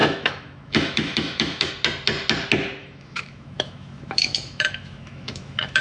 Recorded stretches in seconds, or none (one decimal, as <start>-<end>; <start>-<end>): 1.7-2.8